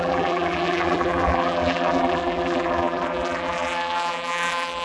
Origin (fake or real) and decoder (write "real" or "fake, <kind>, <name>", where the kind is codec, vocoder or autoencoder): fake, vocoder, BigVGAN v2